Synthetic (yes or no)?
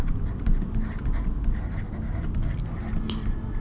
no